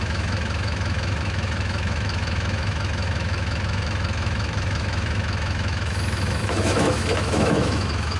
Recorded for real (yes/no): no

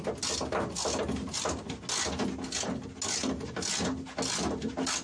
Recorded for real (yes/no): yes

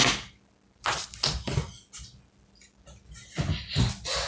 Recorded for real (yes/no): yes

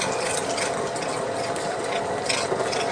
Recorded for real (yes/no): yes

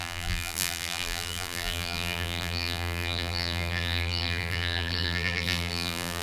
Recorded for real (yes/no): no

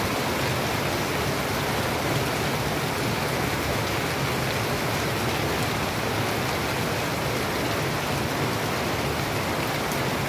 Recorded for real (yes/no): yes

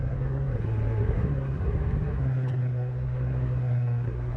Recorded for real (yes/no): no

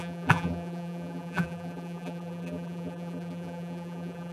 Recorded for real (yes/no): no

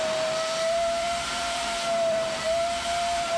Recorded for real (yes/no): no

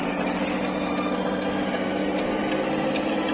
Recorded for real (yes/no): yes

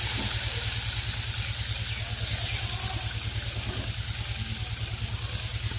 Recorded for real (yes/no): yes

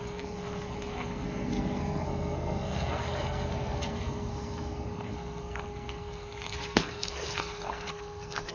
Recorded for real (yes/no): no